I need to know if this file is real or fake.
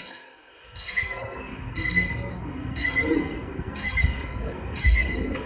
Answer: fake